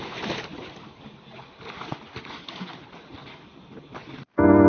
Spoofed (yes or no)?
no